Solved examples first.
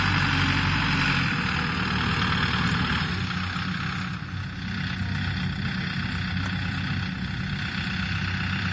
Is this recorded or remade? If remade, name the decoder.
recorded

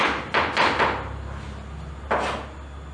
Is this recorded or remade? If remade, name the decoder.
recorded